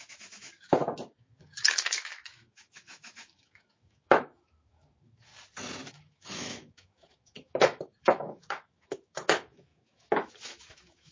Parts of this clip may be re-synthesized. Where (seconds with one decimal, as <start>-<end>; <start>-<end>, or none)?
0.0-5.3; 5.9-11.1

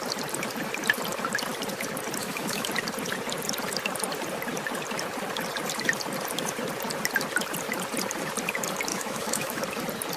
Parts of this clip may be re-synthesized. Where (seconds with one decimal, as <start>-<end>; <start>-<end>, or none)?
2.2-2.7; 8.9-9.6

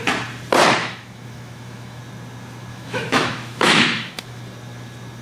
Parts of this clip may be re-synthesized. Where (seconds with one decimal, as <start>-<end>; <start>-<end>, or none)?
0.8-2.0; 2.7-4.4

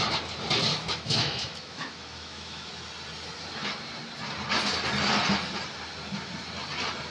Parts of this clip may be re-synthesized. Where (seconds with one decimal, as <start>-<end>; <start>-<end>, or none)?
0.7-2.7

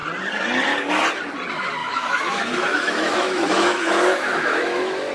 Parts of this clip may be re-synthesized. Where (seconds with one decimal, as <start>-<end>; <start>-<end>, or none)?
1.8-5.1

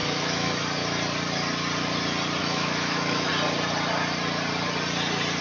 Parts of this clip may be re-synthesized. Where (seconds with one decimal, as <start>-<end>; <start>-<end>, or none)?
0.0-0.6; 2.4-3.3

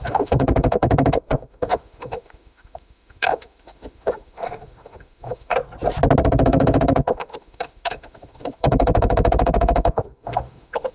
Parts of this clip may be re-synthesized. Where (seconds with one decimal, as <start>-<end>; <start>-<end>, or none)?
0.0-5.6; 6.2-10.9

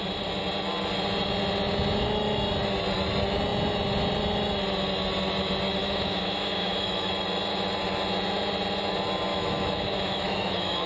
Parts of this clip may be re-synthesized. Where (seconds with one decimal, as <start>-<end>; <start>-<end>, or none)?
5.8-7.1; 9.3-10.9